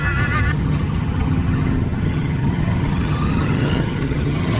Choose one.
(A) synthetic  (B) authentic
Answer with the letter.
A